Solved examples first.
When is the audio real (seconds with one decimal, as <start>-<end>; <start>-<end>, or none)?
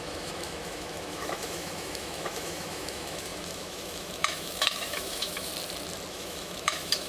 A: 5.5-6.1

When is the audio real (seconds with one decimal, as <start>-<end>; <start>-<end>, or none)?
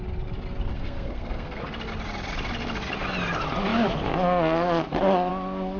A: 0.0-0.7; 1.6-5.8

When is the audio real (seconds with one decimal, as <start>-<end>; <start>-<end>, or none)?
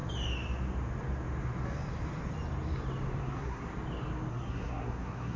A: 0.0-3.2; 3.7-4.3